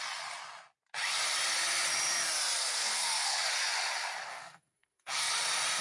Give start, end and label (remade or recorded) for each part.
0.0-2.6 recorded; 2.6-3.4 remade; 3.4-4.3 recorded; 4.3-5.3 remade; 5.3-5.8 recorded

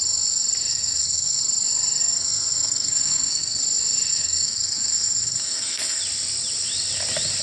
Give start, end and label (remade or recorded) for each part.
0.0-0.7 recorded; 0.7-1.4 remade; 1.4-2.0 recorded; 2.0-3.6 remade; 3.6-4.1 recorded; 4.1-6.0 remade; 6.0-7.4 recorded

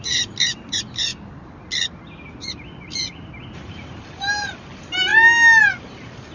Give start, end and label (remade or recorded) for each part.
0.0-1.1 remade; 1.1-2.9 recorded; 2.9-5.1 remade; 5.1-5.8 recorded; 5.8-6.3 remade

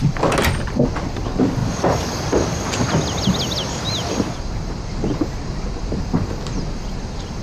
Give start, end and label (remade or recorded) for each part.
0.0-7.4 recorded

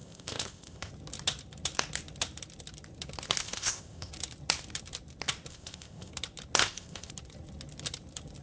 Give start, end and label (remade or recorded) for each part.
0.0-0.9 remade; 0.9-3.4 recorded; 3.4-4.1 remade; 4.1-5.5 recorded; 5.5-6.1 remade; 6.1-6.6 recorded; 6.6-7.1 remade; 7.1-8.4 recorded